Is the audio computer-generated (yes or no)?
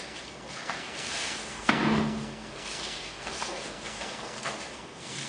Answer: yes